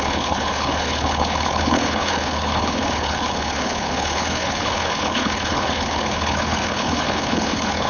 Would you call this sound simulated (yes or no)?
yes